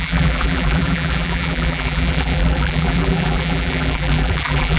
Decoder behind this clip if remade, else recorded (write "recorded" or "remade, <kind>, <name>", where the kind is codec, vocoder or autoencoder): remade, vocoder, BigVGAN v2